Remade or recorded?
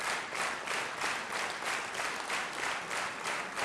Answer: recorded